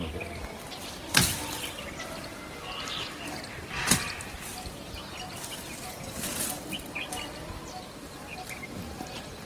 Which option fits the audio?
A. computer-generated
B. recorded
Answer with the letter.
B